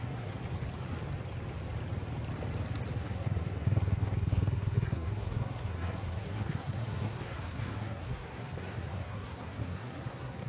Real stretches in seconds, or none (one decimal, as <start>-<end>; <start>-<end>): 0.4-3.0